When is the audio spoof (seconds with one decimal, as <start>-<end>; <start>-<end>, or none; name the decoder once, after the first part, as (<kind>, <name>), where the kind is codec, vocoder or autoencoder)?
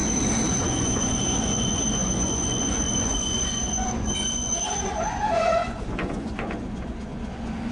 0.5-7.7 (vocoder, Vocos)